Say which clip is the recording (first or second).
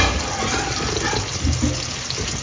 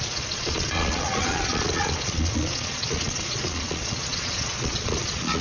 first